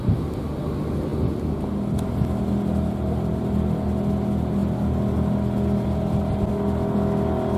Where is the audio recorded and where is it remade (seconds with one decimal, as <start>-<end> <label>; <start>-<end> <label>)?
0.0-7.6 recorded